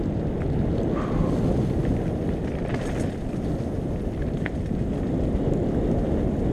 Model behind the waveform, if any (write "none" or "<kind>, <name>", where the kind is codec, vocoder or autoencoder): none